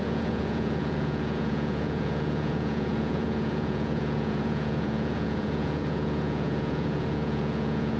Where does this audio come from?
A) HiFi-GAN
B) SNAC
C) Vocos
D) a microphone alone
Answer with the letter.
C